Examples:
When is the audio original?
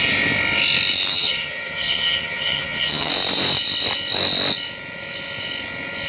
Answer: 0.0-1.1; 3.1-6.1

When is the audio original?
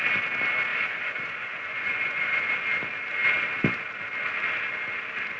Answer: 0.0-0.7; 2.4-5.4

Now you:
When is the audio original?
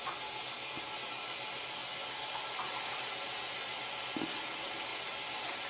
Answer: 0.0-5.7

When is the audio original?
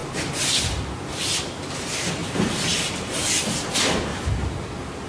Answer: 1.4-2.2; 3.3-4.1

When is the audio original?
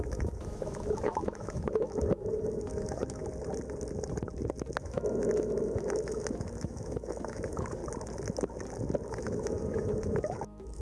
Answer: 3.2-4.8; 7.8-9.1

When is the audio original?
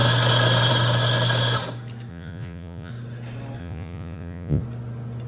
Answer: 0.0-2.1; 2.9-3.6; 4.6-5.3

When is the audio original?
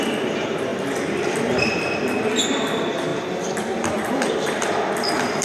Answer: 0.0-5.4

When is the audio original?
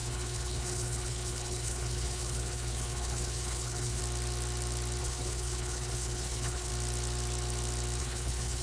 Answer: 4.0-5.0; 6.7-8.0